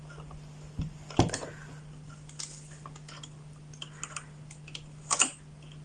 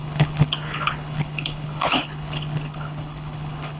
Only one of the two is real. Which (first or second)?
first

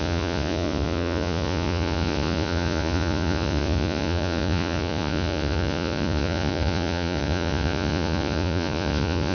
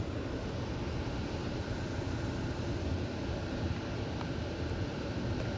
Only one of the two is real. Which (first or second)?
second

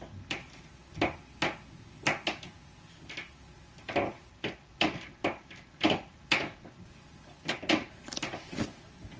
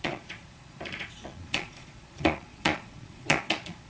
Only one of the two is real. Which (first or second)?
first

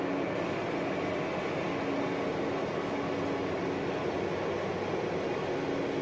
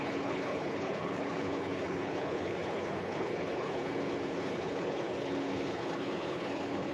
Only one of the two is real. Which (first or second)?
first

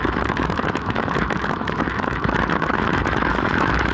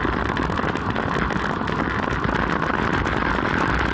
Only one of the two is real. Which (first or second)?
second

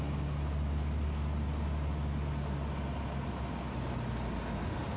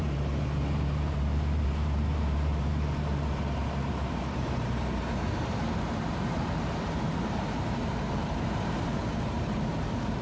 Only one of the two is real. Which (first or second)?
first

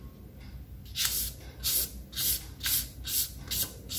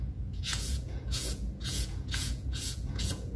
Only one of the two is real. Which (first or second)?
first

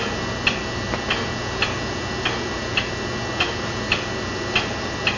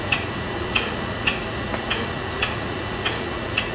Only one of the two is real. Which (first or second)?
first